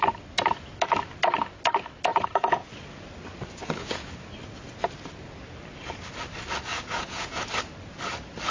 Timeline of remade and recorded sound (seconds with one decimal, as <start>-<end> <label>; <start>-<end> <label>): 0.0-2.1 recorded; 2.1-2.7 remade; 2.7-3.6 recorded; 3.6-4.1 remade; 4.1-6.7 recorded; 6.7-7.4 remade; 7.4-8.5 recorded